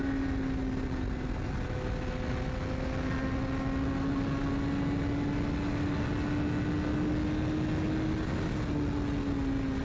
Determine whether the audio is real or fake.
real